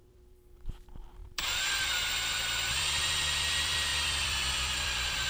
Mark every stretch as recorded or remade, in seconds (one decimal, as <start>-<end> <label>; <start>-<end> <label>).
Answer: 0.0-5.3 remade